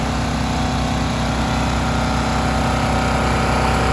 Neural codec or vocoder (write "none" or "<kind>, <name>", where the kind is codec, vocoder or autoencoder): none